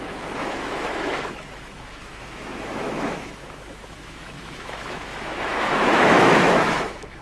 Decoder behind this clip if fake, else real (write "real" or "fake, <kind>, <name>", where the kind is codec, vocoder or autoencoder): fake, autoencoder, DAC-VAE